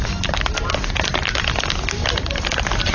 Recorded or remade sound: recorded